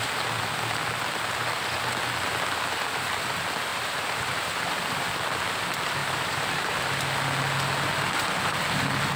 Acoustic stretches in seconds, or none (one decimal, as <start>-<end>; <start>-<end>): 0.0-3.7; 4.8-6.0; 6.7-9.2

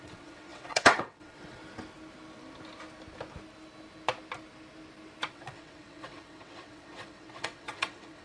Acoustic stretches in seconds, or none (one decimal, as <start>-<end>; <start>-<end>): 1.6-5.3

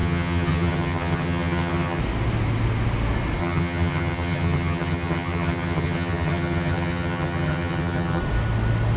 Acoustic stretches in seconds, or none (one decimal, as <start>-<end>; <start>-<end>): 2.0-3.4; 8.2-9.0

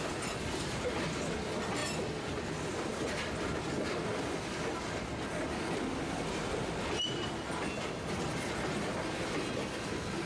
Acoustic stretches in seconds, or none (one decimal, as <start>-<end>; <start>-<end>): 0.0-10.3

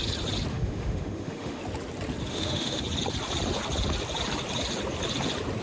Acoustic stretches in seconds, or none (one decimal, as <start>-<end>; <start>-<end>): 0.0-0.5; 1.6-2.3; 2.8-5.6